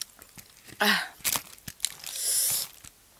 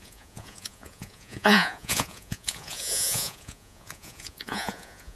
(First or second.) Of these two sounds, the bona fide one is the first